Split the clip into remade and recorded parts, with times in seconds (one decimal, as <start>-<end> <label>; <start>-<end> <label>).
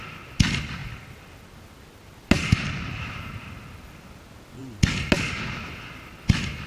0.0-6.7 recorded